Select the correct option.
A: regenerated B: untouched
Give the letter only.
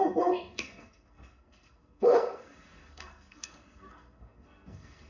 A